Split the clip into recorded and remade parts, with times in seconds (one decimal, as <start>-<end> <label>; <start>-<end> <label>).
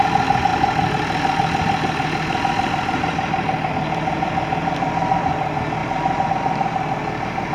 0.0-5.8 recorded; 5.8-6.3 remade; 6.3-7.5 recorded